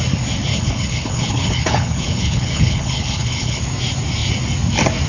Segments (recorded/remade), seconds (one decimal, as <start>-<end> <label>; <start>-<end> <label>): 0.0-0.5 recorded; 0.5-3.6 remade; 3.6-5.1 recorded